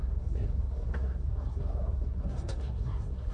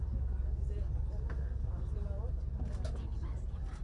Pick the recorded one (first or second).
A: second